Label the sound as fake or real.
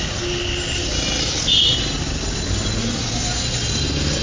real